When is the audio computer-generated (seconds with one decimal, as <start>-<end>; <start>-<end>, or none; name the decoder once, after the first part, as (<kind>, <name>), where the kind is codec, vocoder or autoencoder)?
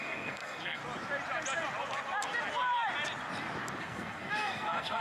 0.0-0.8 (codec, SNAC); 3.8-5.0